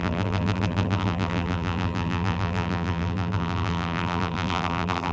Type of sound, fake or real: fake